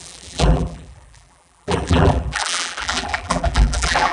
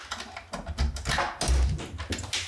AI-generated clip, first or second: first